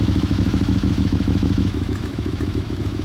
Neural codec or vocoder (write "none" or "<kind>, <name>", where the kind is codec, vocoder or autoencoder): autoencoder, DAC-VAE